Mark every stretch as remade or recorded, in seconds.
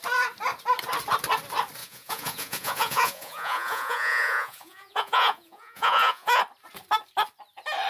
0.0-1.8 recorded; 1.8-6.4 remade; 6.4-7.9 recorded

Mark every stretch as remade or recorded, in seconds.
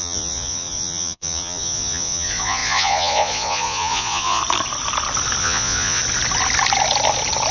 0.0-4.4 remade; 4.4-5.4 recorded; 5.4-6.0 remade; 6.0-7.5 recorded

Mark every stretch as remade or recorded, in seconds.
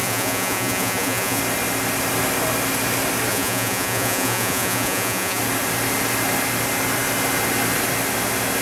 0.0-1.4 remade; 1.4-3.3 recorded; 3.3-5.4 remade; 5.4-8.6 recorded